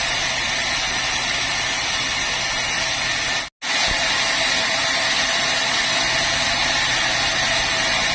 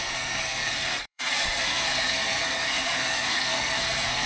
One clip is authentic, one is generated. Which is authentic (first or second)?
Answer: first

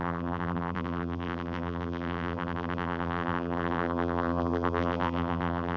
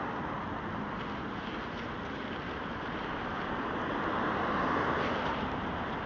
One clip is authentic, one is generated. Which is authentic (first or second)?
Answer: second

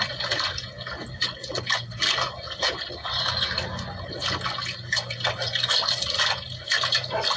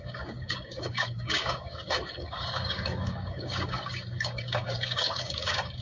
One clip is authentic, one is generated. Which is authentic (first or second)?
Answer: first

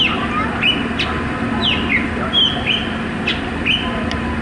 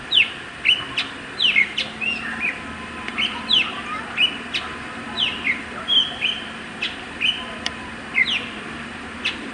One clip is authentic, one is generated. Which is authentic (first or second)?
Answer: first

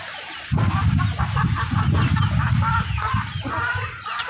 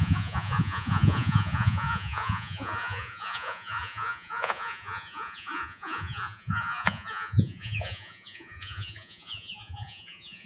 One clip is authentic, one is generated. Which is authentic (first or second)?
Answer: first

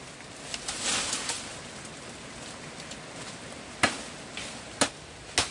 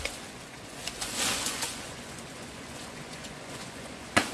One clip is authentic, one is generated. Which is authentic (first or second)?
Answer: first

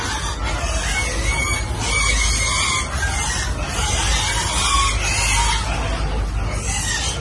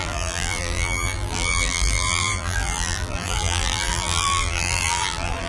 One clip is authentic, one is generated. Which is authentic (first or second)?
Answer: first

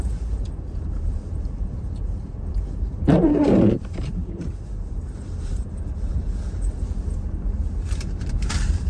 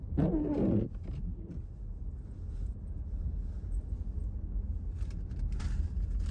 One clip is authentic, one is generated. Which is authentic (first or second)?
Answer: second